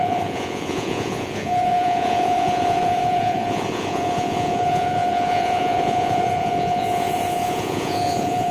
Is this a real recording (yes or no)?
no